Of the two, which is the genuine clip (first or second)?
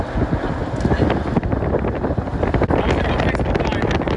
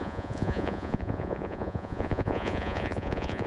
first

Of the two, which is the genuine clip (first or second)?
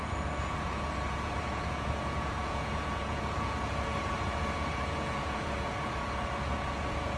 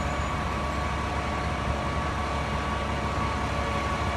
second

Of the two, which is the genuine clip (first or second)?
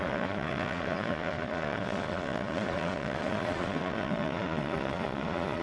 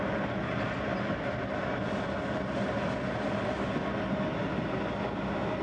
second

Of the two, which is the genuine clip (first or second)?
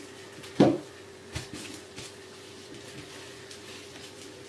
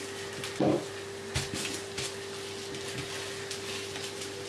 second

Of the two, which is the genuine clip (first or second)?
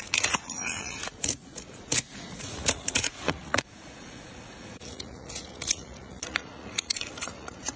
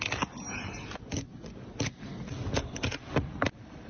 second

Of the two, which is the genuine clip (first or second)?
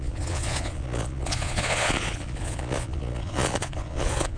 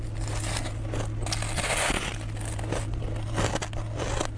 second